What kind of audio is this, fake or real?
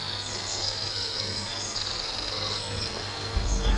fake